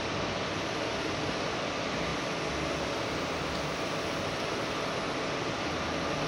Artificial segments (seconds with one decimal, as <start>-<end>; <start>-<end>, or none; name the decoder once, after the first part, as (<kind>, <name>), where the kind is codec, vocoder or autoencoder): none